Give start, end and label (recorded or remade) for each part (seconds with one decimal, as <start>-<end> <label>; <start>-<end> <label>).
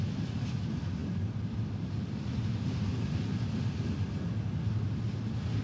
0.0-5.6 recorded